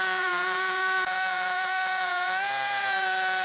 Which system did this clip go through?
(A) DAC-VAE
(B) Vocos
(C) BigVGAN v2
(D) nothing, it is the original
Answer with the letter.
B